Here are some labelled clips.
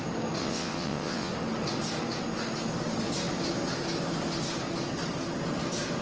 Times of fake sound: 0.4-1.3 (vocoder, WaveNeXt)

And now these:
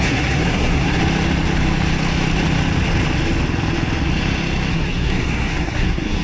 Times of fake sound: 0.0-1.0 (codec, SNAC); 4.7-6.2

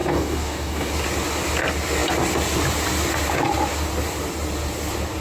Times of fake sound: 0.0-0.9 (codec, DAC)

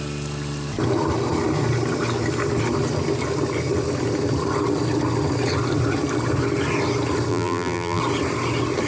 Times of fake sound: 7.3-8.0 (vocoder, BigVGAN v2)

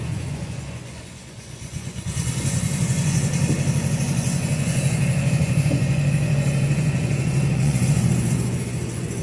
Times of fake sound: 0.0-3.3 (vocoder, Vocos); 3.9-9.2